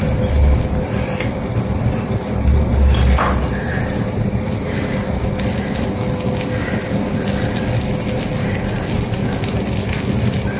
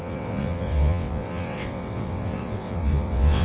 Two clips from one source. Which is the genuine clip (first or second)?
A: first